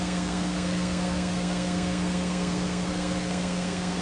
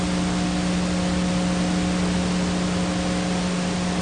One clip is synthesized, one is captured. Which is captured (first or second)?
second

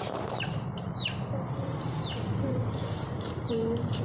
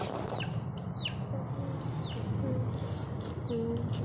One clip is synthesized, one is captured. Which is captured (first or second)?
second